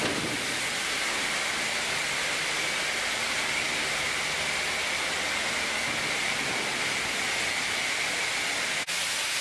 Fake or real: real